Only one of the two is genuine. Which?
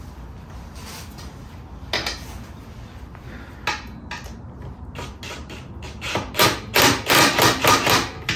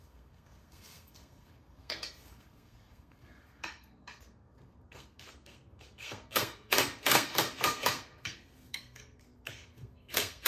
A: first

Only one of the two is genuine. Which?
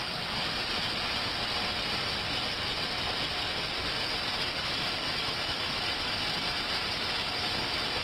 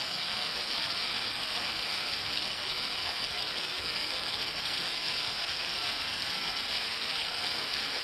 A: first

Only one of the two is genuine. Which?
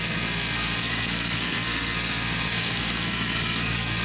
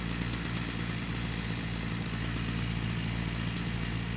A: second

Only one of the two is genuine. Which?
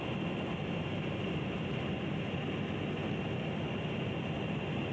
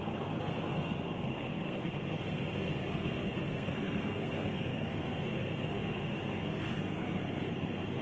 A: first